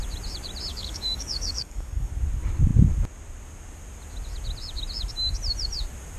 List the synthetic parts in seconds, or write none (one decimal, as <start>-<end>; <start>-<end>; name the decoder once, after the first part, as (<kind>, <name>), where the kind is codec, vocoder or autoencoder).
0.7-2.1 (codec, DAC)